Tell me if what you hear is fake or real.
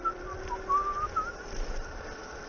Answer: real